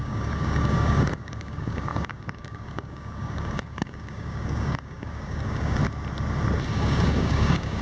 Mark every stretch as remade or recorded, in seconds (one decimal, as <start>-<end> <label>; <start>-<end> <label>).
0.0-5.8 remade; 5.8-6.8 recorded; 6.8-7.8 remade